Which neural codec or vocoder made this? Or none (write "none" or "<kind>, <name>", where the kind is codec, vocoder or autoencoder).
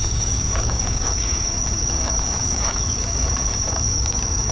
codec, DAC